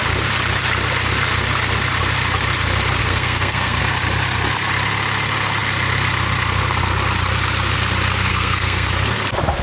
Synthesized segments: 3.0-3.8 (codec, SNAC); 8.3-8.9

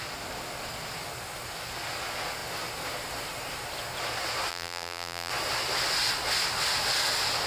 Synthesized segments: 4.5-5.3 (vocoder, BigVGAN v2)

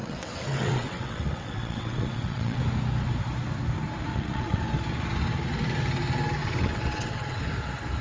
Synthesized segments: 0.0-2.6 (vocoder, WaveNeXt); 4.1-4.6; 6.4-7.4